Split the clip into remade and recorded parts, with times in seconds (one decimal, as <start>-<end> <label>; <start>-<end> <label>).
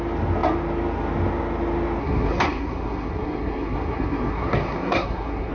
0.0-2.0 recorded; 2.0-5.5 remade